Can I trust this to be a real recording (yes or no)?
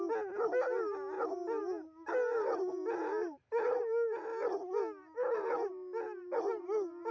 yes